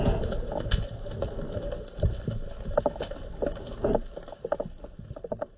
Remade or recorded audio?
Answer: recorded